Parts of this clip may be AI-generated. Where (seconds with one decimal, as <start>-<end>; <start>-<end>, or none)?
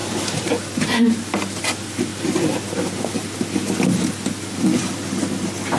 none